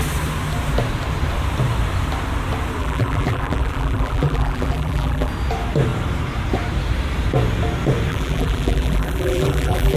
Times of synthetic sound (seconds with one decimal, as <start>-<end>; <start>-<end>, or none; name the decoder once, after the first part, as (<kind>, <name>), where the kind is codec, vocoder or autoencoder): 2.8-5.3 (vocoder, BigVGAN v2); 8.1-10.0